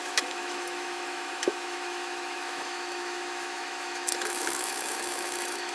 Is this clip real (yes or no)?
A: no